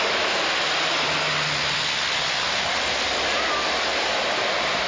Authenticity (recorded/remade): recorded